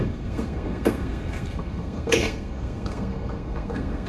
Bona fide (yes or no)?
no